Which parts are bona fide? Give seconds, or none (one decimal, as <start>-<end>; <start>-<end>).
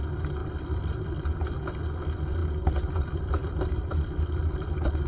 0.0-0.4; 1.5-2.4; 4.5-5.1